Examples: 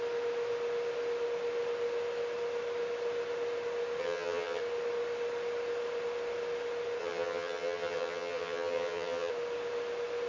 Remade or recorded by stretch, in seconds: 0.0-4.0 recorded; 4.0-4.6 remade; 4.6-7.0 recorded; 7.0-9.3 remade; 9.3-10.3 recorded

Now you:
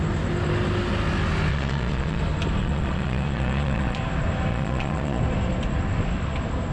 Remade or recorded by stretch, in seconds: 0.0-1.5 recorded; 1.5-2.2 remade; 2.2-2.6 recorded; 2.6-4.0 remade; 4.0-4.5 recorded; 4.5-5.2 remade; 5.2-6.7 recorded

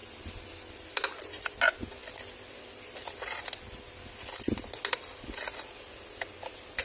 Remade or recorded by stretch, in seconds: 0.0-6.8 recorded

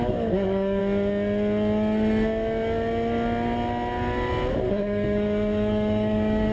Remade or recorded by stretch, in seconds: 0.0-0.8 remade; 0.8-4.7 recorded; 4.7-6.5 remade